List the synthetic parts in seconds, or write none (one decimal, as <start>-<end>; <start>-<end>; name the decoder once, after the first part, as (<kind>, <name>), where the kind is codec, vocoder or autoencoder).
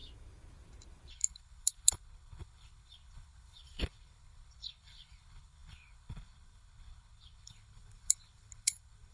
1.1-9.1 (codec, HILCodec)